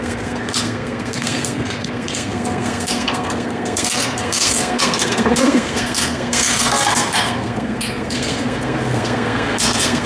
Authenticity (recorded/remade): remade